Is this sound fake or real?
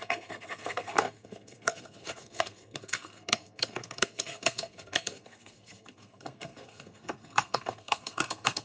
fake